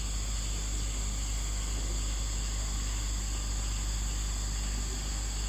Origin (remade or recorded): recorded